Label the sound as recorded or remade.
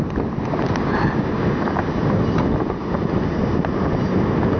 recorded